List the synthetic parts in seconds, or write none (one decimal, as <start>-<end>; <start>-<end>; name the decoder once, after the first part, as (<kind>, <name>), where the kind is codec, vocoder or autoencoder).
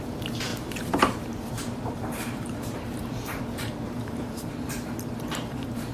0.0-5.9 (vocoder, BigVGAN v2)